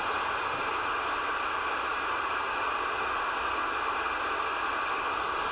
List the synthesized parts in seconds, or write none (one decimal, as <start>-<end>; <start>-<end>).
none